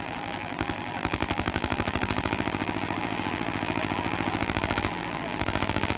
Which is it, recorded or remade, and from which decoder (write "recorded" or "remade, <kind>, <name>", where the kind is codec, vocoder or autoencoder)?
remade, vocoder, BigVGAN v2